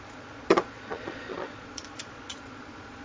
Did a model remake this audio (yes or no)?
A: yes